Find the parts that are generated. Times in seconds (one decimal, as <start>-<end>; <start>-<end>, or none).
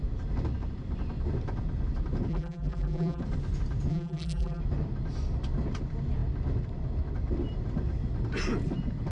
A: 2.3-3.2; 3.9-4.6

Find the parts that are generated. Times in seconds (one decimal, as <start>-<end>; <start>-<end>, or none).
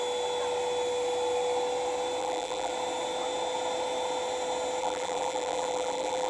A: 2.2-2.7; 4.8-6.3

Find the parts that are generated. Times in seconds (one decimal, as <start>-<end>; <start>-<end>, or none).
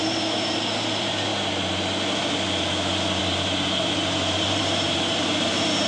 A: 0.0-1.3; 3.2-5.9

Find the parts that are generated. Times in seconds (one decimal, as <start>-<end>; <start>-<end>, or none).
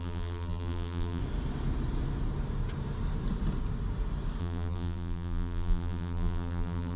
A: 0.0-1.2; 4.4-7.0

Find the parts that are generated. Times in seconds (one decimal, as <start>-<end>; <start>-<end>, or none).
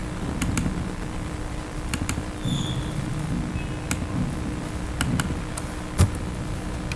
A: 0.0-3.2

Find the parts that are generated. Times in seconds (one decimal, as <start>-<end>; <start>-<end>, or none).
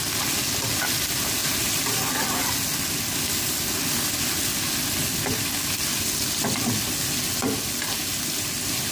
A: 1.4-2.1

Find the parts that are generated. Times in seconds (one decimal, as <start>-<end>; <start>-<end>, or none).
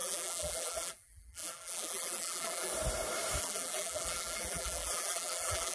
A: 0.0-2.7; 3.4-5.7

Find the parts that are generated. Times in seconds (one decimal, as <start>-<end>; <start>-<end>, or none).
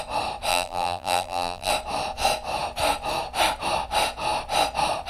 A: 0.5-1.7